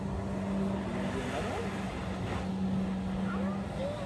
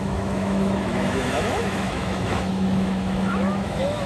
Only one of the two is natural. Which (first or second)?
first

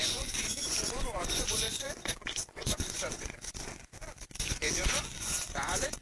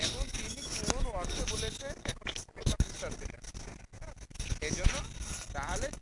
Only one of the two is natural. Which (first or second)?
second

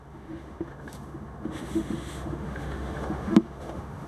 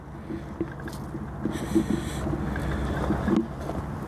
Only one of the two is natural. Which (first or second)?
second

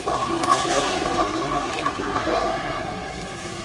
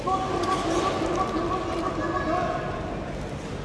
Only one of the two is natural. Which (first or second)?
second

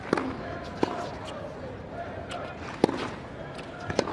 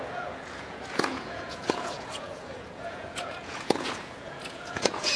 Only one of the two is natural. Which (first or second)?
first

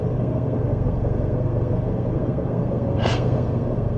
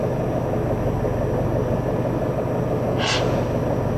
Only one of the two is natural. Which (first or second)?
second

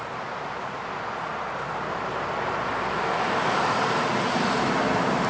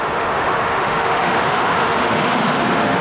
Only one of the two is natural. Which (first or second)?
first